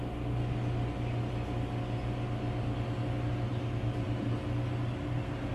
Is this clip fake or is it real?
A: real